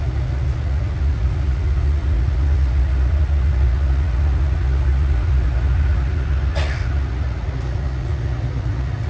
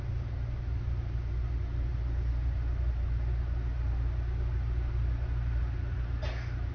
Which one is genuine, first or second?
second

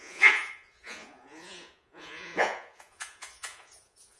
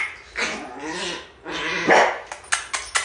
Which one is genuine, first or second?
second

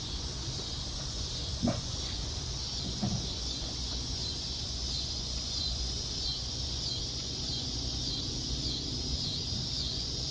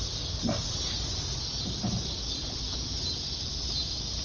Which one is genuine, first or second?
second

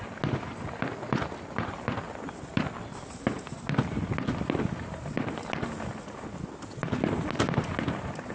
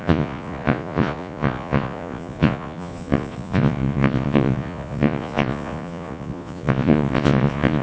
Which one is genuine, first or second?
first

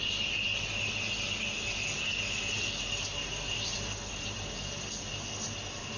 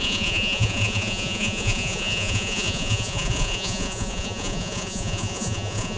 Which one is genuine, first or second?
first